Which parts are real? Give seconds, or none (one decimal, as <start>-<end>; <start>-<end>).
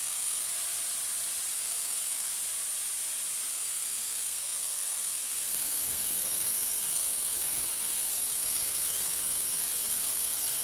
0.5-1.5; 2.3-3.5